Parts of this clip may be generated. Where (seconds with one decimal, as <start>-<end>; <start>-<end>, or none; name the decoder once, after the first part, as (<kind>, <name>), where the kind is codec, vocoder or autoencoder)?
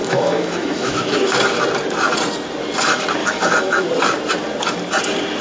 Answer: 0.0-1.4 (autoencoder, DAC-VAE); 3.2-3.9